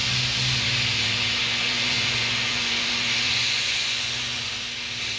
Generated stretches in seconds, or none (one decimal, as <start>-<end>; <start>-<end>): 1.4-4.5